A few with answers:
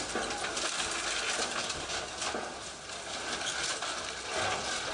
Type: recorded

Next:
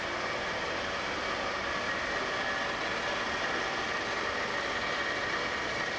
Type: recorded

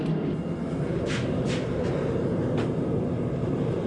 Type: recorded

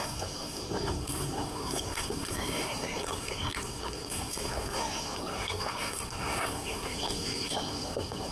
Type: remade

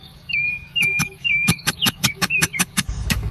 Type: remade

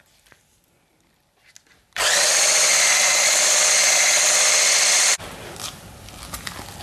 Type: recorded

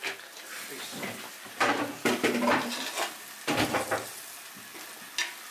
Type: recorded